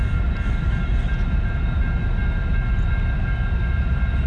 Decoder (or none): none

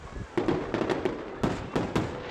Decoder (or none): none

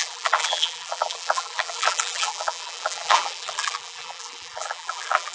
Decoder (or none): vocoder, BigVGAN v2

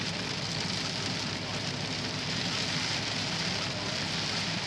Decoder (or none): none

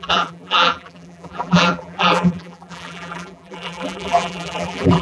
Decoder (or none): vocoder, BigVGAN v2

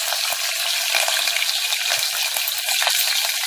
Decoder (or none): none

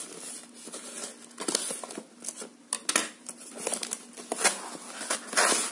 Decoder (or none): none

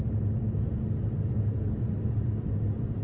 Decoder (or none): none